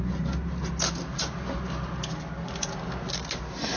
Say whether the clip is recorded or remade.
recorded